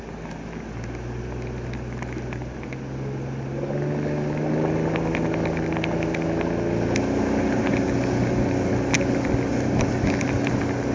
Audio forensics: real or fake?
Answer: real